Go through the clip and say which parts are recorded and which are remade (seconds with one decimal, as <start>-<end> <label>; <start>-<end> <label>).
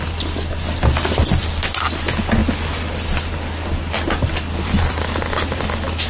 0.0-6.1 recorded